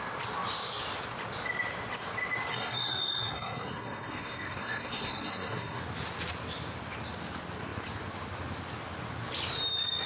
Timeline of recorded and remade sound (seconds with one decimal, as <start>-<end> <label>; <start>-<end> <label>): 0.0-2.5 recorded; 2.5-5.8 remade; 5.8-10.1 recorded